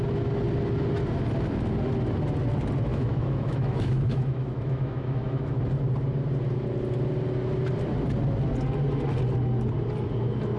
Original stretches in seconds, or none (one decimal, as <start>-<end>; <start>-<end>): 0.0-2.9; 5.6-10.6